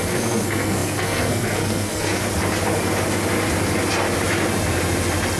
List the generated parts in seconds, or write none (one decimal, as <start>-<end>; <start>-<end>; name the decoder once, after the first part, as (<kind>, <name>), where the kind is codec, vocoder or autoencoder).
0.0-2.2 (codec, SNAC)